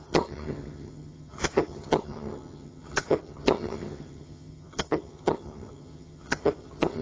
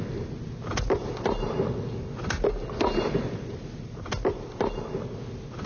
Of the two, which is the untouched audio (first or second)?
second